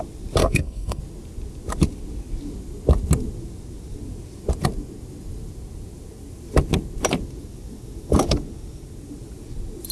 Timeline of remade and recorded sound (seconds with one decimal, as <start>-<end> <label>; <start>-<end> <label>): 0.0-0.4 recorded; 0.4-1.0 remade; 1.0-9.9 recorded